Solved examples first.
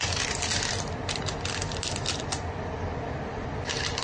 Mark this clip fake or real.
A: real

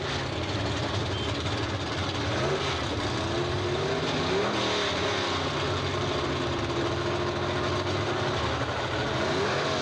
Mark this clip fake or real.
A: real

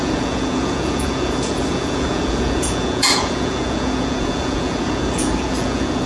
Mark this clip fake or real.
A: fake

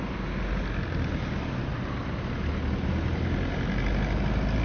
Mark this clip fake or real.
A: real